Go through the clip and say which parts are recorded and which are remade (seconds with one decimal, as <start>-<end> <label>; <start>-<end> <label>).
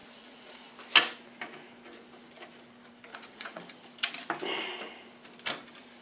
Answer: 0.0-0.7 remade; 0.7-3.1 recorded; 3.1-3.6 remade; 3.6-6.0 recorded